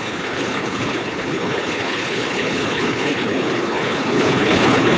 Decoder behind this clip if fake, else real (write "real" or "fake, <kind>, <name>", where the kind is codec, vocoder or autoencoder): fake, codec, HILCodec